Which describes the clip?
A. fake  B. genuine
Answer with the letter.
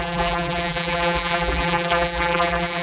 A